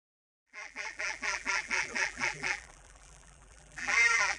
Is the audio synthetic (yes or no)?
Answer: yes